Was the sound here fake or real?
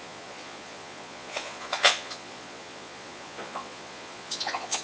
fake